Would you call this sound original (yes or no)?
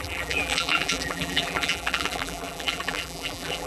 no